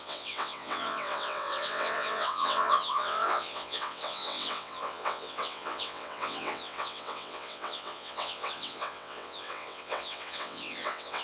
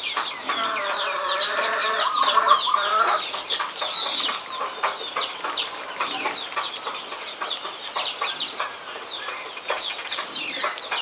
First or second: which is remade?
first